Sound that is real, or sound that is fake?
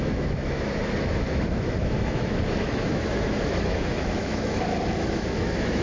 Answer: fake